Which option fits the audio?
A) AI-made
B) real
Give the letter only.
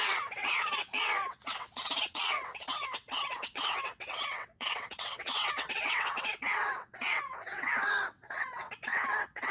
A